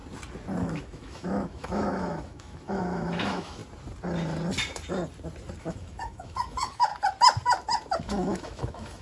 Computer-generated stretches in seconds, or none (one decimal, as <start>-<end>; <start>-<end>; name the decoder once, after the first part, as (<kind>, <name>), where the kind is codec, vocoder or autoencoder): 0.6-3.6 (autoencoder, DAC-VAE); 5.6-6.9; 8.0-9.0